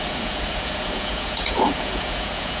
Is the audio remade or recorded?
remade